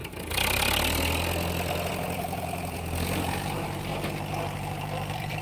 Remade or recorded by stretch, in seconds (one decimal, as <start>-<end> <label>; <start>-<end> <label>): 0.0-1.9 recorded; 1.9-3.9 remade; 3.9-4.8 recorded; 4.8-5.4 remade